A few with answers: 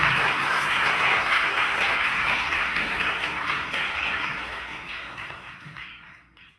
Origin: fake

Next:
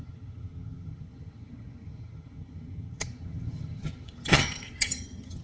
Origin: fake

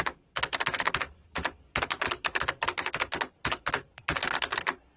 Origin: real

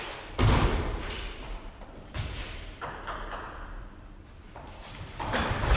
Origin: fake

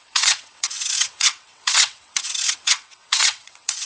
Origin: fake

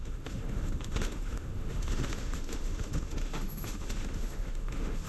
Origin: fake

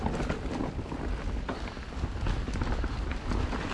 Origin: real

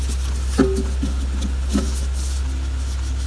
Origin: real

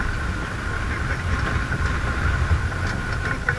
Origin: real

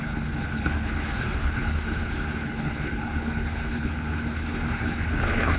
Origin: fake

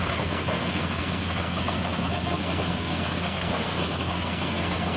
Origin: fake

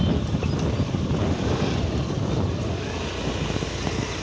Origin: real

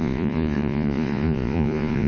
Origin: fake